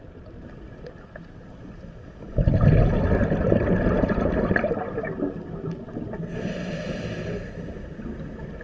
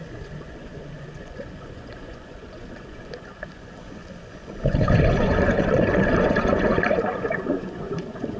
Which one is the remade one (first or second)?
second